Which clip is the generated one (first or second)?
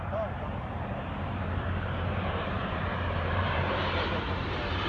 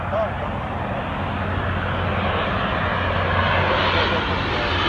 first